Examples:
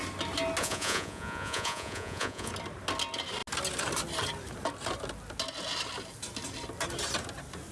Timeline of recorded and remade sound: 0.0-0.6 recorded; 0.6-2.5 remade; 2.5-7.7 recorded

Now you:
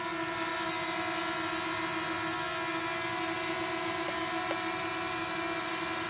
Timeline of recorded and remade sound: 0.0-6.1 recorded

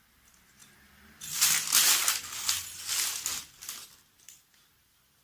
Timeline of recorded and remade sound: 0.0-0.6 remade; 0.6-1.3 recorded; 1.3-2.0 remade; 2.0-4.1 recorded; 4.1-5.2 remade

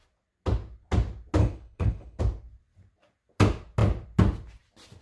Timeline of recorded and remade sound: 0.0-1.4 recorded; 1.4-2.2 remade; 2.2-5.0 recorded

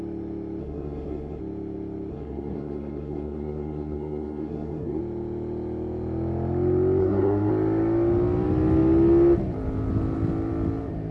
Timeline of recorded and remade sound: 0.0-0.6 recorded; 0.6-1.4 remade; 1.4-2.1 recorded; 2.1-5.0 remade; 5.0-7.0 recorded; 7.0-7.5 remade; 7.5-11.1 recorded

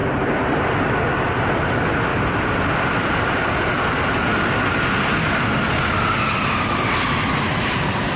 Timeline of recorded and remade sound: 0.0-8.2 recorded

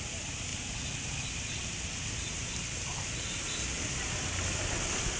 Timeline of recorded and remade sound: 0.0-2.3 recorded; 2.3-4.6 remade; 4.6-5.2 recorded